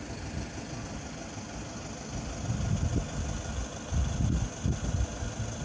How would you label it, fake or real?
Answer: real